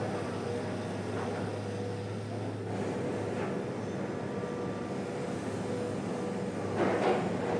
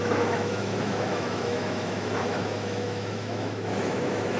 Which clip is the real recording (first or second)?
first